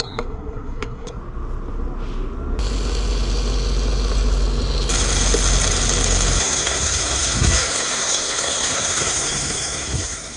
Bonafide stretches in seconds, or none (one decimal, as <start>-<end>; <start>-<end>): 1.2-6.4